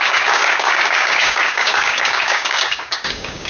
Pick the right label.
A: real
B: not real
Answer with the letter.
B